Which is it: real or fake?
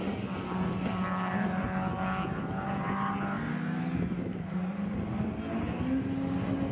real